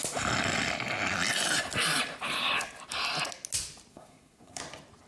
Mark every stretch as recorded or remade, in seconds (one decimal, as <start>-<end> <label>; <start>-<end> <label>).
0.0-3.9 recorded; 3.9-4.6 remade; 4.6-5.1 recorded